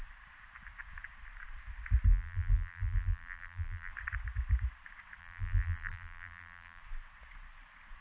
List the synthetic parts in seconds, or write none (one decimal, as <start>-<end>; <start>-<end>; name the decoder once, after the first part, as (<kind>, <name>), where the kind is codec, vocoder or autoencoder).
2.1-3.9 (vocoder, BigVGAN v2); 5.2-6.8